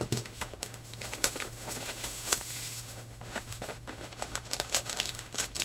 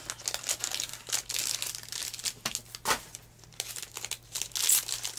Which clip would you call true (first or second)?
second